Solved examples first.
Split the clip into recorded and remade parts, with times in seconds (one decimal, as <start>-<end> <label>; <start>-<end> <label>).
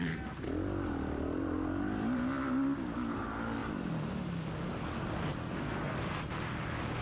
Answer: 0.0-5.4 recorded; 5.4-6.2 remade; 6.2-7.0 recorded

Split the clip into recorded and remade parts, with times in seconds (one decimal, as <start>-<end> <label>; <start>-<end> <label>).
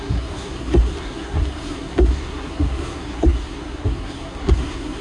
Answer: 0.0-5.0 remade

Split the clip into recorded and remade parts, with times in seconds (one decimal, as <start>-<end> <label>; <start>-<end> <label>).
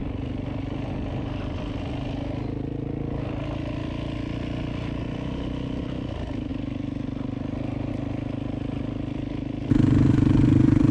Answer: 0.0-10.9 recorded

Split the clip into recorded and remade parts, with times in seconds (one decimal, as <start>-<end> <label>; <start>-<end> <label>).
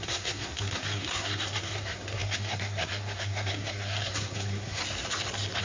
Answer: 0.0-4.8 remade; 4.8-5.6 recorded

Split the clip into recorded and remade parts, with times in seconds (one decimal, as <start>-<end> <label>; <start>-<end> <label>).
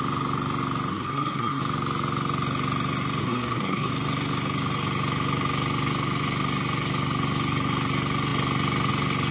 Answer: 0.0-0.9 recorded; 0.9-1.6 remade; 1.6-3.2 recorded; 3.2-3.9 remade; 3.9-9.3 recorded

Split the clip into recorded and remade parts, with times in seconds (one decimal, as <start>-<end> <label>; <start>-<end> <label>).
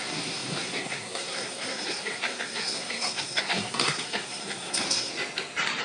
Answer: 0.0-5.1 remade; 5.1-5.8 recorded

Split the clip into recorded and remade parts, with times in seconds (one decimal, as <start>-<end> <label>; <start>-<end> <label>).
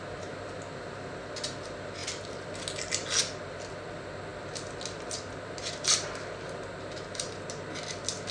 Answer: 0.0-8.3 recorded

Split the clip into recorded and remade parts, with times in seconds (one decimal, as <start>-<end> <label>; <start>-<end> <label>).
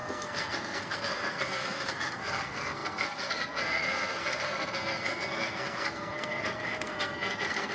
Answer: 0.0-7.7 remade